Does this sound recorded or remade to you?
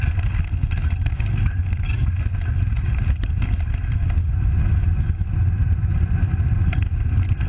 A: recorded